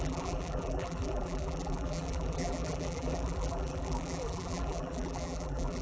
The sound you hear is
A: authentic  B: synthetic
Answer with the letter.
B